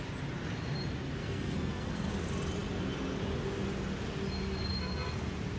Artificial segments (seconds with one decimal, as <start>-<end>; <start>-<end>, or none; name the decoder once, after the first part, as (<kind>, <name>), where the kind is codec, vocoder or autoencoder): 1.2-2.1 (codec, SNAC)